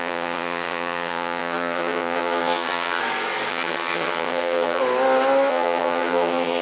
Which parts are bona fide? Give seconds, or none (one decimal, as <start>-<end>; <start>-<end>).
3.0-3.5; 4.8-5.5